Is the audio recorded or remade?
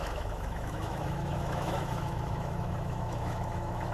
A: remade